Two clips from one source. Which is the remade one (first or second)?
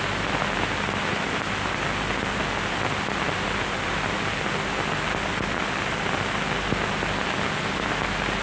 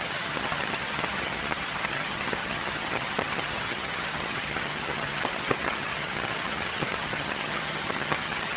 second